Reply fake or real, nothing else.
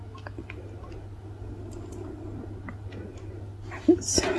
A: real